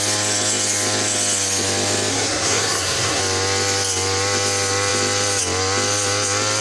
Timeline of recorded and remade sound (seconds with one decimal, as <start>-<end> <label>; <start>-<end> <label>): 0.0-2.1 recorded; 2.1-3.2 remade; 3.2-6.6 recorded